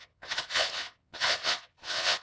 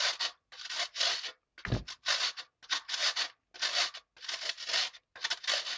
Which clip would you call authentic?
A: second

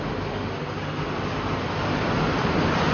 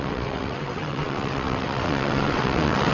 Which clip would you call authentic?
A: first